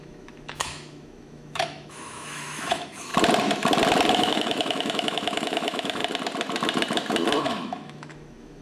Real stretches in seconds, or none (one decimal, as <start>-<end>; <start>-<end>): 3.1-4.1; 6.0-7.4